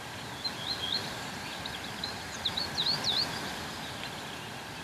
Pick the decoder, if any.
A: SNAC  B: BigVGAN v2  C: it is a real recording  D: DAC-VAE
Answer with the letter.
C